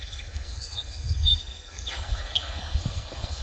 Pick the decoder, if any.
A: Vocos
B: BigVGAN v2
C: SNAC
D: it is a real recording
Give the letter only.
C